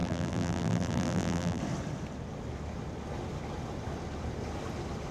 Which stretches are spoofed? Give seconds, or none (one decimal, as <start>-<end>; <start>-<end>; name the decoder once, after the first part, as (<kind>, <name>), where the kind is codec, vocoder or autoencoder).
0.0-1.6 (vocoder, BigVGAN v2)